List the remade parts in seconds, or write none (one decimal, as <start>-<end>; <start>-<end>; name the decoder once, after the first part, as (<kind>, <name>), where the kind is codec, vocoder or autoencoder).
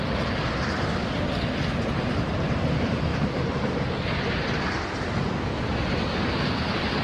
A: 3.1-4.7 (vocoder, BigVGAN v2)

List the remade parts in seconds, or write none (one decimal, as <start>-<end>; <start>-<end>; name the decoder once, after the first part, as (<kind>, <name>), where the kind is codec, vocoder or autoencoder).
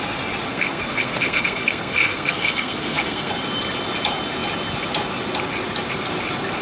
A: 0.5-3.3 (codec, SNAC)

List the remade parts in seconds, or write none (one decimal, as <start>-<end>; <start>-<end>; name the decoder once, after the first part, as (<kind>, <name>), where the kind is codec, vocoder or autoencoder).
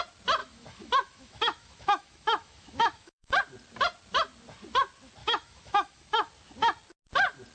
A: 0.4-3.4 (autoencoder, DAC-VAE); 5.2-6.3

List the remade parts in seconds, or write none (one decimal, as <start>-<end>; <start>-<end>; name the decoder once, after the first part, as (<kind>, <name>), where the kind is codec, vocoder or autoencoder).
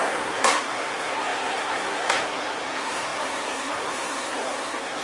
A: 0.0-5.0 (codec, SNAC)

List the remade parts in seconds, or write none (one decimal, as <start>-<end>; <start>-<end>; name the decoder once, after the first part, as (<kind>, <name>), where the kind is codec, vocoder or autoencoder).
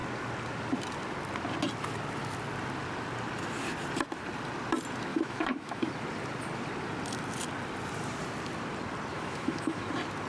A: 5.1-5.9 (autoencoder, DAC-VAE); 9.1-9.9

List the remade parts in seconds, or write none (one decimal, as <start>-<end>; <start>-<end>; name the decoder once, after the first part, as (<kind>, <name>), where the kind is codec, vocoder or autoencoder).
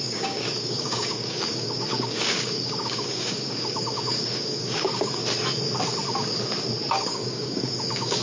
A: 0.0-5.2 (codec, DAC); 6.9-8.2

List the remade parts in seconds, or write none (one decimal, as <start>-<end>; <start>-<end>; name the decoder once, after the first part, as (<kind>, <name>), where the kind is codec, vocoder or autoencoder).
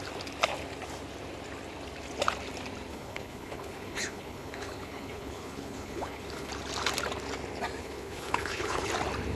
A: 2.9-6.5 (codec, HILCodec); 7.8-8.9